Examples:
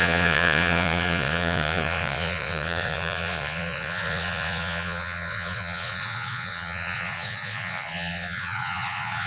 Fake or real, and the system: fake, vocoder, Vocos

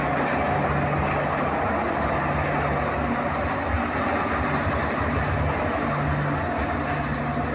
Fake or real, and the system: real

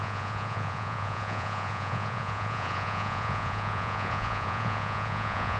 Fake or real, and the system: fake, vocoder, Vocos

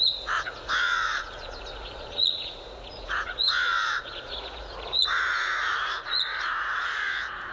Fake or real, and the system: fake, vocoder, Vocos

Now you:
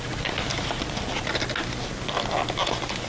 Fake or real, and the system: real